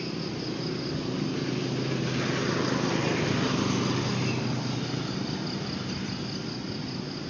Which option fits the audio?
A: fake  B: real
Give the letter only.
B